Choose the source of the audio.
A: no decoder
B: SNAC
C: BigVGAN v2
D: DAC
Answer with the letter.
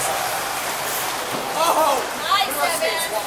C